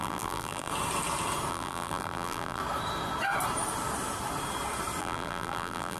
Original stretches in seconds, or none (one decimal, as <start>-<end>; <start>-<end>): 0.7-1.5; 2.6-5.0